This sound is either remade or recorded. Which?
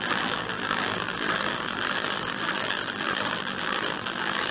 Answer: remade